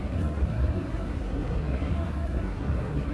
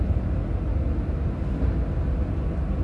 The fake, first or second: first